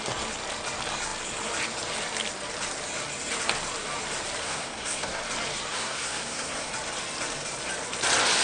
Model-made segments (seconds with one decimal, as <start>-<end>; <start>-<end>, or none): 4.4-5.2; 5.7-6.7